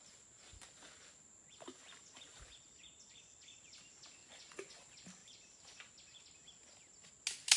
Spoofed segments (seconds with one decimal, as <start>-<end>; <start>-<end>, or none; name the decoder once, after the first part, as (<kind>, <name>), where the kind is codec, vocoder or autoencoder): 4.2-4.8 (vocoder, Vocos)